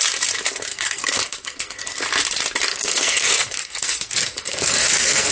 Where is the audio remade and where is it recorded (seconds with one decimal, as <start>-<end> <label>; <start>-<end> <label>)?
0.0-0.7 recorded; 0.7-1.9 remade; 1.9-2.7 recorded; 2.7-5.3 remade